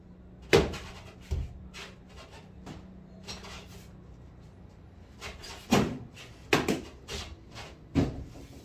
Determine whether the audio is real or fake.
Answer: real